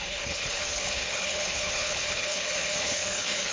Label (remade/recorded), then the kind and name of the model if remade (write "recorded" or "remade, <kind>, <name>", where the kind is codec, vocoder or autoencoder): remade, codec, HILCodec